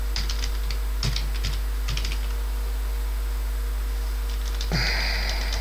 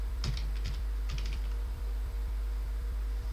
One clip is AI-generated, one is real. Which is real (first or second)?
first